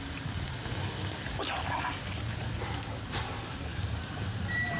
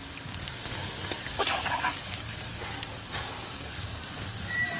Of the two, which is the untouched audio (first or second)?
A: first